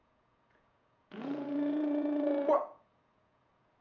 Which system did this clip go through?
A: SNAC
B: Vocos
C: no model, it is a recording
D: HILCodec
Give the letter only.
B